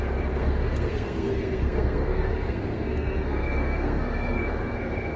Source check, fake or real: fake